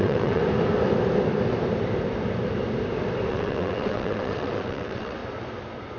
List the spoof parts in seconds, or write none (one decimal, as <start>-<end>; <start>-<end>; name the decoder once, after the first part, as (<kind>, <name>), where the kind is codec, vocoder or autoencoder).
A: 0.0-0.4 (vocoder, WaveNeXt); 3.3-5.2